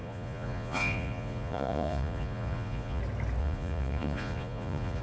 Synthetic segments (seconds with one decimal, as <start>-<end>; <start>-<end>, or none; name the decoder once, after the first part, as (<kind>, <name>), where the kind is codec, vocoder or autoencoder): 0.0-3.0 (vocoder, Vocos); 3.4-5.0